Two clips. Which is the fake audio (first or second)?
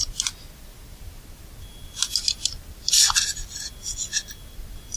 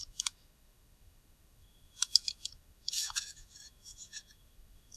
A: second